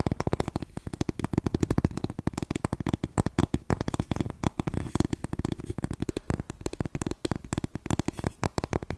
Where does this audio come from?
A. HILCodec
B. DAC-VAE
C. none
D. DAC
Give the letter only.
C